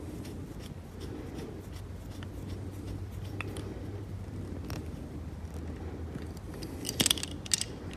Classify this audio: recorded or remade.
recorded